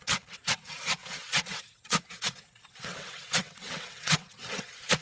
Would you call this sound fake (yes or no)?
yes